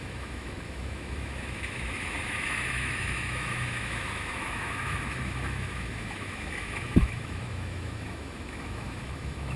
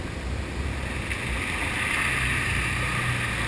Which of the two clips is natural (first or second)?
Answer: second